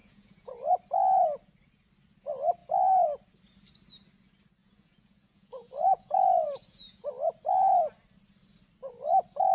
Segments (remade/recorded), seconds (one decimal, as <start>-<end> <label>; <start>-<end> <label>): 0.0-0.5 remade; 0.5-4.6 recorded; 4.6-7.1 remade; 7.1-9.5 recorded